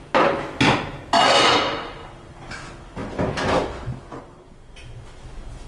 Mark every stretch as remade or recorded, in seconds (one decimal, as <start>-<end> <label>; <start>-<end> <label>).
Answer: 0.0-3.0 recorded; 3.0-4.2 remade; 4.2-5.7 recorded

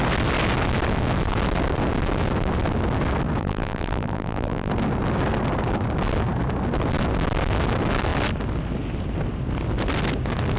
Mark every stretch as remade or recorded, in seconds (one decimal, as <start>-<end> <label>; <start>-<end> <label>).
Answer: 0.0-3.4 recorded; 3.4-4.7 remade; 4.7-10.6 recorded

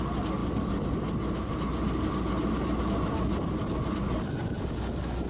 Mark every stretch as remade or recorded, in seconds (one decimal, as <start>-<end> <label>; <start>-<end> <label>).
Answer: 0.0-5.3 recorded

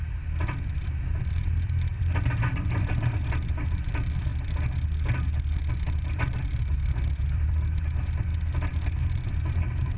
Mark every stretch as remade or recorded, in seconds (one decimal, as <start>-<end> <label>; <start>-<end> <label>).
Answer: 0.0-4.3 remade; 4.3-5.7 recorded; 5.7-8.3 remade; 8.3-9.0 recorded; 9.0-10.0 remade

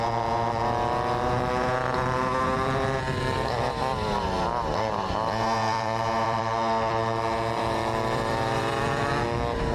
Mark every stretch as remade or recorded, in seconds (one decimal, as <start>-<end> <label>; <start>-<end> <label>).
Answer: 0.0-5.6 recorded; 5.6-9.1 remade; 9.1-9.7 recorded

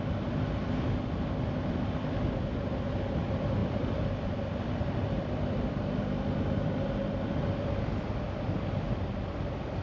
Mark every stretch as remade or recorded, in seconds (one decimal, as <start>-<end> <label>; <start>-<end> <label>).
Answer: 0.0-3.6 recorded; 3.6-6.0 remade; 6.0-9.8 recorded